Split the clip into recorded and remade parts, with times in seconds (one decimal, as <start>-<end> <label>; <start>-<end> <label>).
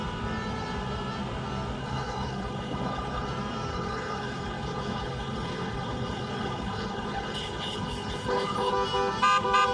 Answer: 0.0-1.8 recorded; 1.8-3.3 remade; 3.3-3.7 recorded; 3.7-8.7 remade; 8.7-9.7 recorded